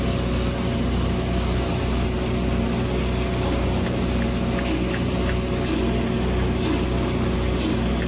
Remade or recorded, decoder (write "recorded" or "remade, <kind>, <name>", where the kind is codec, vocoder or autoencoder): recorded